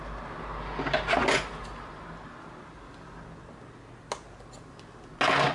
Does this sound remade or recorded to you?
recorded